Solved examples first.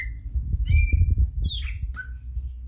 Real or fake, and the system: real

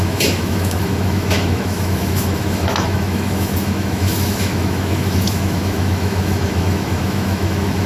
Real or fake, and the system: fake, autoencoder, DAC-VAE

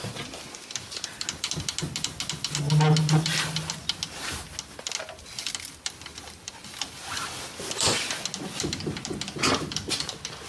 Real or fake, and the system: real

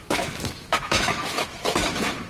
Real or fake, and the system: fake, autoencoder, DAC-VAE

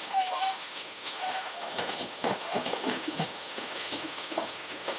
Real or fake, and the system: fake, autoencoder, DAC-VAE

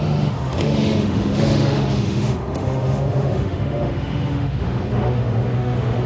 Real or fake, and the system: fake, autoencoder, DAC-VAE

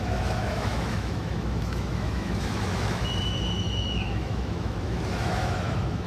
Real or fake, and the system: fake, autoencoder, DAC-VAE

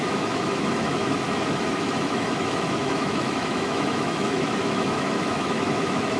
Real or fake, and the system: fake, autoencoder, DAC-VAE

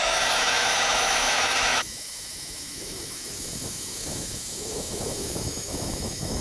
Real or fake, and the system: fake, autoencoder, DAC-VAE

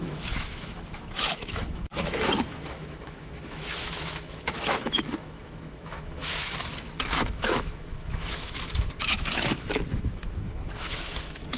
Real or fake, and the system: fake, autoencoder, DAC-VAE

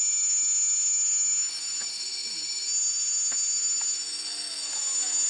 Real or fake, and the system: fake, autoencoder, DAC-VAE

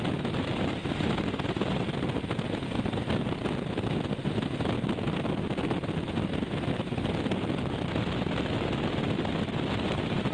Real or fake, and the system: real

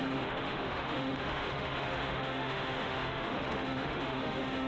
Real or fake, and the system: fake, autoencoder, DAC-VAE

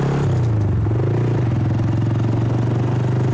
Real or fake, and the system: real